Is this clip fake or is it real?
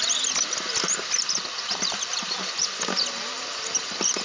real